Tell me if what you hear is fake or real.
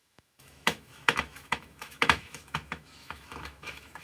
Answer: fake